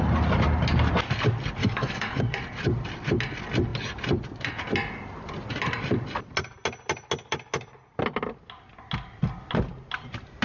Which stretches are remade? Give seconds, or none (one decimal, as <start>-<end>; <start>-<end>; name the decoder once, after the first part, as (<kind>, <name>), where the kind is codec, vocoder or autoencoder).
1.6-2.2 (autoencoder, DAC-VAE)